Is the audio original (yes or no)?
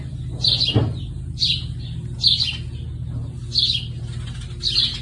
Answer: yes